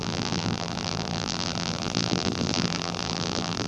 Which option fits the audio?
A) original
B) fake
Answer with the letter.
B